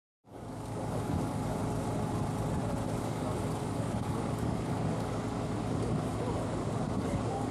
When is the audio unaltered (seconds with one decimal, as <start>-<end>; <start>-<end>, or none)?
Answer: 1.6-3.0